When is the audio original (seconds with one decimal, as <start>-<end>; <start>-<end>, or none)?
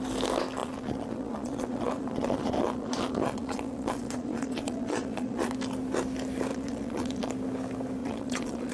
0.0-0.6; 5.5-6.5; 7.3-8.0